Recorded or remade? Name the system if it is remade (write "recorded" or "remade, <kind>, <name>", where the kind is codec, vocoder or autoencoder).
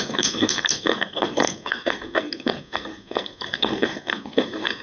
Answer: remade, codec, SNAC